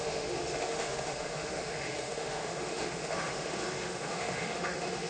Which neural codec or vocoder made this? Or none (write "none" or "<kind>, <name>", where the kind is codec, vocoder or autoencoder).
autoencoder, DAC-VAE